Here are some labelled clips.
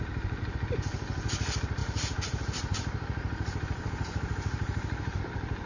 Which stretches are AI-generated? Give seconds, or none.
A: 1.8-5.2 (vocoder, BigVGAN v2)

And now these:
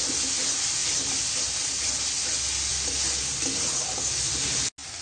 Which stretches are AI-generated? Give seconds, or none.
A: none

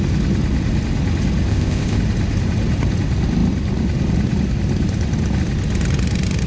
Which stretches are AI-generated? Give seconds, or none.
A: 1.5-2.0 (codec, ZipCodec)

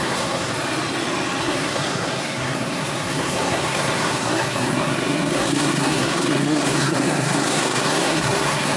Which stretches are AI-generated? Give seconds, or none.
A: 0.0-0.5 (codec, SNAC); 1.4-8.8

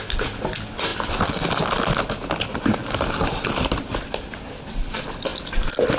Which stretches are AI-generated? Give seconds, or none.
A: none